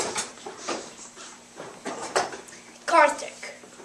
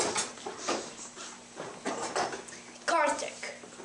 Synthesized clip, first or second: first